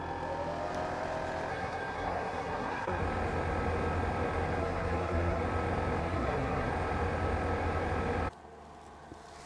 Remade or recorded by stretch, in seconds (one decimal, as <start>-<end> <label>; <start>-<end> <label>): 0.0-1.5 recorded; 1.5-3.0 remade; 3.0-4.6 recorded; 4.6-5.4 remade; 5.4-6.0 recorded; 6.0-6.7 remade; 6.7-9.5 recorded